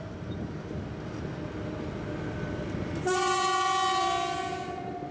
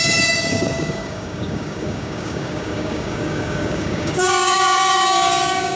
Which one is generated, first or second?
second